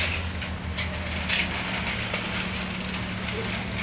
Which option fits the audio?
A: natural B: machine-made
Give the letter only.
A